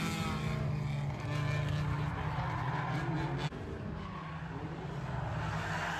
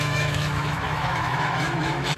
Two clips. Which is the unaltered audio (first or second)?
first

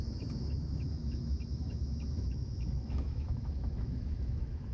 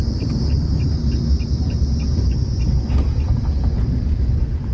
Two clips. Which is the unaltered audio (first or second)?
second